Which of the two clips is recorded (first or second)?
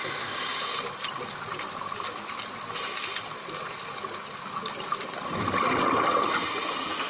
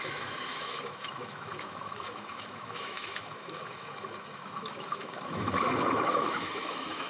first